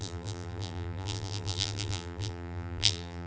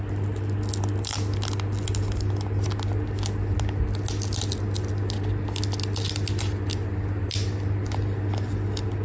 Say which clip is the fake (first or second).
first